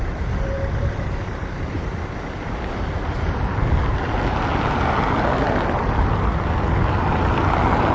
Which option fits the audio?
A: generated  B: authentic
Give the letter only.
B